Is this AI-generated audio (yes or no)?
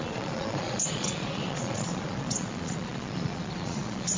yes